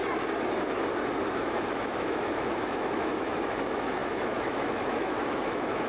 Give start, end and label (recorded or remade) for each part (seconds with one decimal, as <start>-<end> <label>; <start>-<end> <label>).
0.0-1.3 recorded; 1.3-5.9 remade